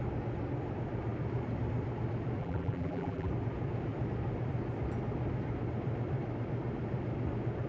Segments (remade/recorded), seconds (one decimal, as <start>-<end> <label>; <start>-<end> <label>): 0.0-2.4 recorded; 2.4-3.3 remade; 3.3-7.7 recorded